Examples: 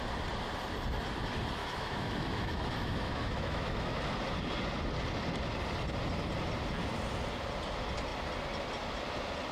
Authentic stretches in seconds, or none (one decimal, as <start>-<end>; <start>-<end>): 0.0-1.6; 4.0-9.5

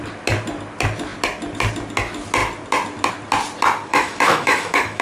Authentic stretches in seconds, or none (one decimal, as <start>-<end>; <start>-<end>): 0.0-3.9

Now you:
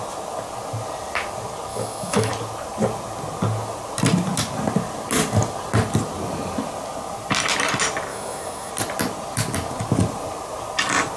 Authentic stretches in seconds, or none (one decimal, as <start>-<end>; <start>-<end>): 0.0-1.7; 2.3-8.1; 8.7-11.2

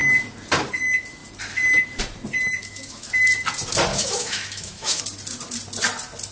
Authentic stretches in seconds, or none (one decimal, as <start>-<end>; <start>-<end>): 0.0-2.6; 3.1-3.9; 5.0-6.3

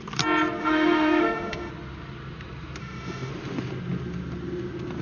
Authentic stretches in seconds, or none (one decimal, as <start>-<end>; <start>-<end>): 0.0-0.6; 1.7-2.8; 3.3-5.0

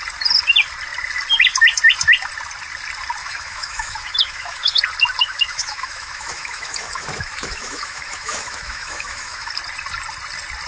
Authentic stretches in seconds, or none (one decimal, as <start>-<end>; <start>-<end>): 0.0-3.2; 4.8-5.2; 9.5-10.7

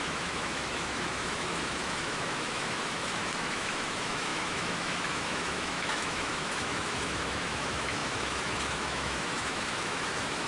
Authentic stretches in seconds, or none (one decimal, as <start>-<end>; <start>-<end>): none